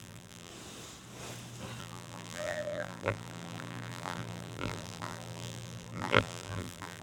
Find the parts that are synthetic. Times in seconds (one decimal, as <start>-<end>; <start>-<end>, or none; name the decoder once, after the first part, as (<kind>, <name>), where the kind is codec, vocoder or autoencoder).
0.0-0.5 (vocoder, BigVGAN v2); 1.8-7.0